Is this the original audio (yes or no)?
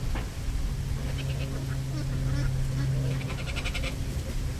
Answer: yes